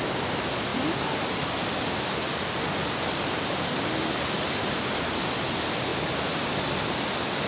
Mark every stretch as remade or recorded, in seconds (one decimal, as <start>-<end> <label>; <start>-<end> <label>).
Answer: 0.0-7.5 recorded